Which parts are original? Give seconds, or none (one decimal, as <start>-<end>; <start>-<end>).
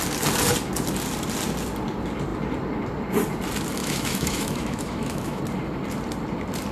0.0-3.8; 5.4-6.7